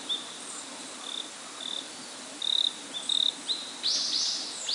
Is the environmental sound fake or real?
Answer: real